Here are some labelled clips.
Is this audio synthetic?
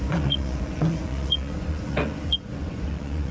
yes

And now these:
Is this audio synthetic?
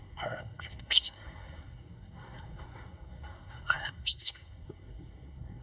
yes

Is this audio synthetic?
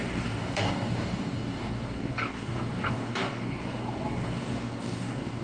yes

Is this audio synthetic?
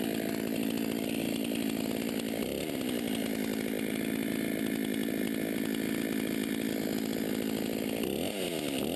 no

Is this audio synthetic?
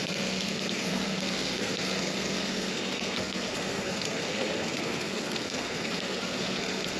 yes